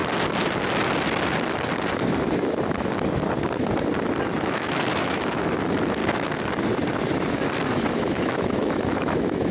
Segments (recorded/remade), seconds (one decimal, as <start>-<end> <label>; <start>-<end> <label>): 0.0-4.4 recorded; 4.4-6.0 remade; 6.0-7.7 recorded; 7.7-9.5 remade